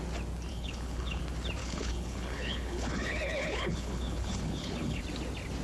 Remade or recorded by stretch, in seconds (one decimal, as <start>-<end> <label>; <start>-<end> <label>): 0.0-0.5 recorded; 0.5-1.2 remade; 1.2-1.6 recorded; 1.6-5.0 remade; 5.0-5.6 recorded